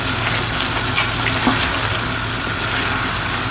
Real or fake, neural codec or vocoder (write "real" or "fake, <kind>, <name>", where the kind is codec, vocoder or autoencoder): real